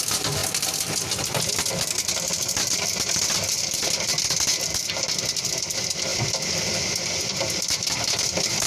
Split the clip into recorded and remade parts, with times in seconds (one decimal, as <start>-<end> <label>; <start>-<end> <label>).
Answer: 0.0-0.4 remade; 0.4-2.4 recorded; 2.4-4.1 remade; 4.1-4.9 recorded; 4.9-8.7 remade